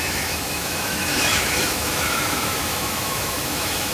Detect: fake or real fake